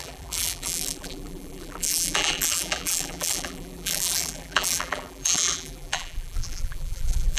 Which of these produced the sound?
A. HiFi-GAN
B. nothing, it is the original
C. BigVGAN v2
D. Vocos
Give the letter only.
C